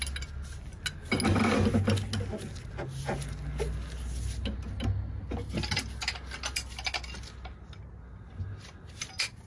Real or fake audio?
real